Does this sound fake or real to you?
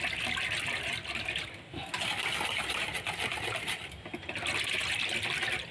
real